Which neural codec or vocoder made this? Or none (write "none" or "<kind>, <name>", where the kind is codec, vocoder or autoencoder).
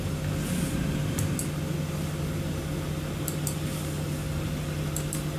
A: none